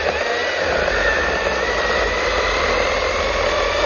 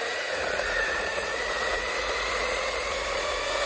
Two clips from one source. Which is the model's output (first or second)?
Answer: second